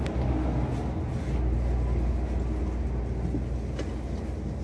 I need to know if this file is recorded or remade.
recorded